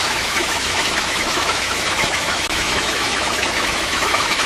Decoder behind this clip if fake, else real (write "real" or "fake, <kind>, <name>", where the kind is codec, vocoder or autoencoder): fake, autoencoder, DAC-VAE